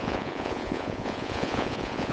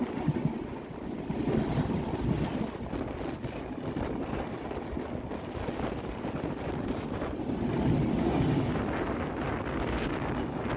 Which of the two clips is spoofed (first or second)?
first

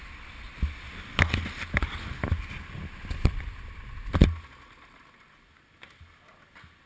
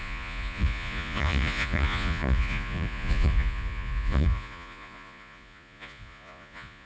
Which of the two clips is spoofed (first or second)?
second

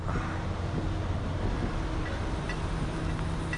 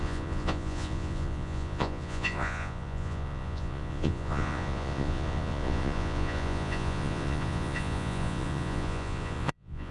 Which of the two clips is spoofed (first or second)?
second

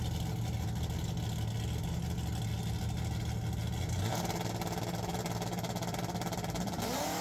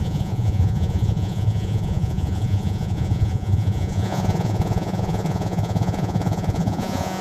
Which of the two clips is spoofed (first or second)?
second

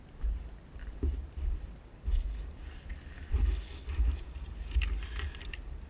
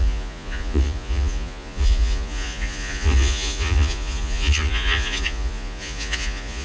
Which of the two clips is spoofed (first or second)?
second